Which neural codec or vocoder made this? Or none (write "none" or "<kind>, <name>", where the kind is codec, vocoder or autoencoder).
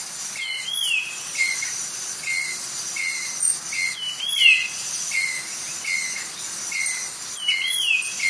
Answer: none